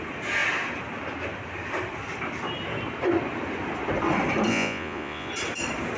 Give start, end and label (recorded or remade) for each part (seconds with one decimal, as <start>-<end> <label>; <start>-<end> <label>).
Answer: 0.0-4.5 recorded; 4.5-5.3 remade; 5.3-6.0 recorded